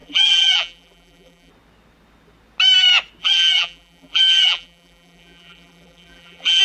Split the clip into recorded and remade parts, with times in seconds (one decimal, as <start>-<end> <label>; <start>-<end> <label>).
0.0-1.5 remade; 1.5-3.2 recorded; 3.2-6.6 remade